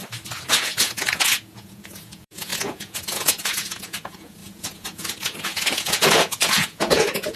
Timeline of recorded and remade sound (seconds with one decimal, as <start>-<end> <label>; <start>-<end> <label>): 0.0-0.5 recorded; 0.5-7.3 remade